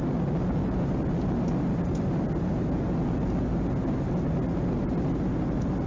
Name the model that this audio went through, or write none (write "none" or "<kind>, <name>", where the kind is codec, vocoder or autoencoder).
none